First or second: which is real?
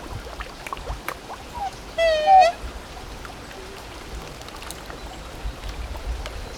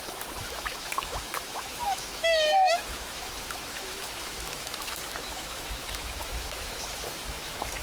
first